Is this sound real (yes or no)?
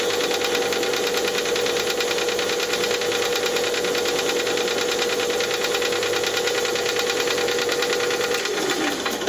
yes